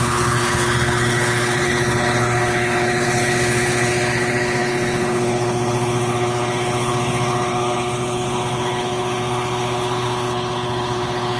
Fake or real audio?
fake